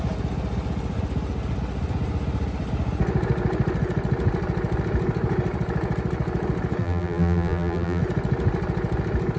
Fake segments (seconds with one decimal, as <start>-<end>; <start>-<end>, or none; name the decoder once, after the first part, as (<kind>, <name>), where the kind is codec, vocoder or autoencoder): 6.8-8.0 (vocoder, BigVGAN v2)